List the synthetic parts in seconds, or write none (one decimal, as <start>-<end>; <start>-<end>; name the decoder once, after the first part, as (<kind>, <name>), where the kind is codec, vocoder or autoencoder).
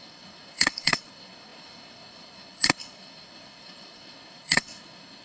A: 0.0-5.2 (codec, HILCodec)